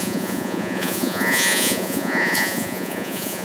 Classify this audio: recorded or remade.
remade